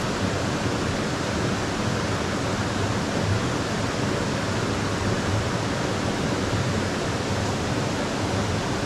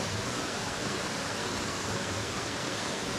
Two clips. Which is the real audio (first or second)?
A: first